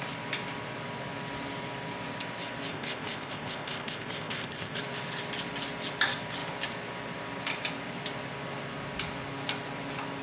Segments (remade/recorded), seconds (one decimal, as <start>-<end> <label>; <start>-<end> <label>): 0.0-2.7 recorded; 2.7-4.8 remade; 4.8-10.2 recorded

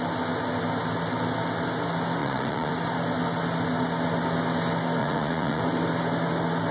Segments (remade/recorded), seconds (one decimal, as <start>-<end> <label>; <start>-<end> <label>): 0.0-2.2 recorded; 2.2-2.7 remade; 2.7-5.0 recorded; 5.0-5.6 remade; 5.6-6.7 recorded